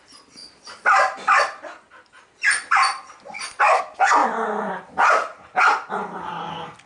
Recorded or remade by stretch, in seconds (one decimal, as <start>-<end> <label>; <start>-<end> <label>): 0.0-6.9 remade